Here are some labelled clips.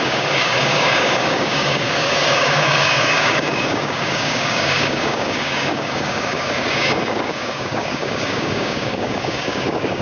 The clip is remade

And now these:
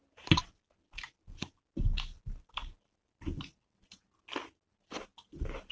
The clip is recorded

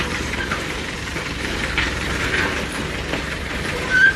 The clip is remade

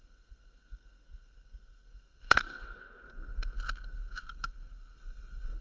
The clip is remade